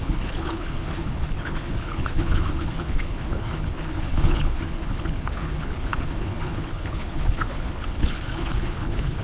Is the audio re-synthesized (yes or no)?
yes